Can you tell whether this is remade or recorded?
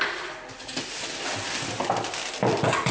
recorded